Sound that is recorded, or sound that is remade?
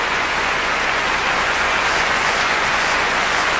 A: remade